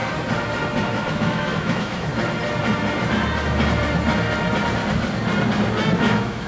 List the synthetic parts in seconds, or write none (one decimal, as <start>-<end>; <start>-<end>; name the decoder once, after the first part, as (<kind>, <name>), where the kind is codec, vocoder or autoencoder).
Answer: 0.9-2.1 (autoencoder, DAC-VAE); 6.0-6.5

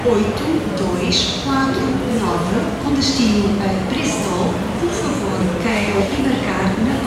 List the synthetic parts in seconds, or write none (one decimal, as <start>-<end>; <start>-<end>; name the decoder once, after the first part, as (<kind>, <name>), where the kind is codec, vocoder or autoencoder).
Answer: 5.7-6.2 (autoencoder, DAC-VAE)

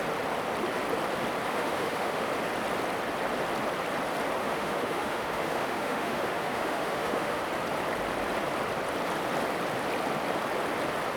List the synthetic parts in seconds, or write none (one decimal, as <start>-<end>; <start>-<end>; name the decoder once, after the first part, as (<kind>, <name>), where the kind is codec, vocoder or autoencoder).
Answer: 1.5-2.3 (autoencoder, DAC-VAE); 4.4-7.4

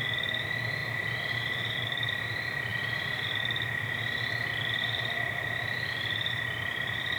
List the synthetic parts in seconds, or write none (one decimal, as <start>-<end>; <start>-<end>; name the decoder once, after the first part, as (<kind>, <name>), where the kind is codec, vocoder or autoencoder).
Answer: none

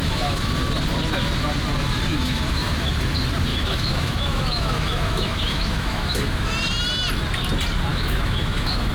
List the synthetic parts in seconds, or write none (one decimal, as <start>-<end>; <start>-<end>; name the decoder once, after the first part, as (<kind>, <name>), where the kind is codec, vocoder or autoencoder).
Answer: 0.0-0.5 (autoencoder, DAC-VAE); 2.1-2.7; 3.5-6.5; 7.9-8.9

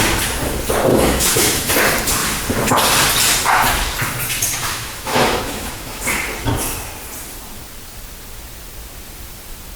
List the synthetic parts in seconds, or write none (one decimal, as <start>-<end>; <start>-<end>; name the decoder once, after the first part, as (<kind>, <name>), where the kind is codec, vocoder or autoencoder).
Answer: 0.9-1.7 (autoencoder, DAC-VAE); 4.6-6.0

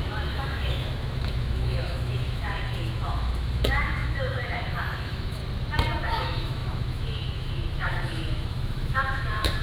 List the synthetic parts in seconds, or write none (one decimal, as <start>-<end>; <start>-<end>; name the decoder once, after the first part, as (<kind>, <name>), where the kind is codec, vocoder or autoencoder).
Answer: 0.0-5.4 (autoencoder, DAC-VAE); 6.0-9.6

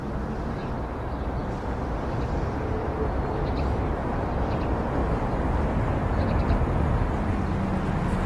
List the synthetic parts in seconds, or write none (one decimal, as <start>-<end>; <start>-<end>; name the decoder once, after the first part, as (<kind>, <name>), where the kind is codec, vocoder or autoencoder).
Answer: none